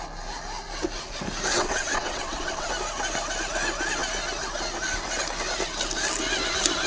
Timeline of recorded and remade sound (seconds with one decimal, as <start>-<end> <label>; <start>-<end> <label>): 0.0-1.5 recorded; 1.5-2.7 remade; 2.7-6.9 recorded

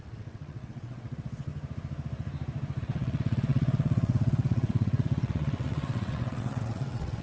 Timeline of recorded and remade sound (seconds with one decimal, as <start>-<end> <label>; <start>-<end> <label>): 0.0-1.5 remade; 1.5-2.8 recorded; 2.8-7.2 remade

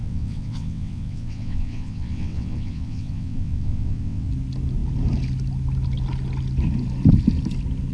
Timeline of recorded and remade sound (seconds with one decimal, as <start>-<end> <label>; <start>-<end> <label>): 0.0-4.3 remade; 4.3-7.9 recorded

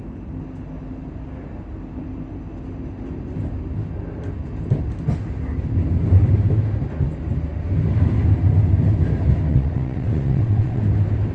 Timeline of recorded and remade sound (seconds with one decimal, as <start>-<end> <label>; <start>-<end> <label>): 0.0-9.5 recorded; 9.5-10.8 remade; 10.8-11.3 recorded

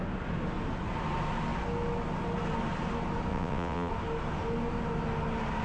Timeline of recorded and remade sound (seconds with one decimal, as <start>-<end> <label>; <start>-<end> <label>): 0.0-3.3 recorded; 3.3-3.9 remade; 3.9-5.6 recorded